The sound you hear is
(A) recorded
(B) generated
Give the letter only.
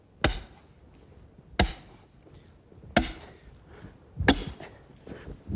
A